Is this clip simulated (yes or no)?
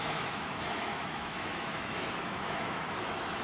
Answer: yes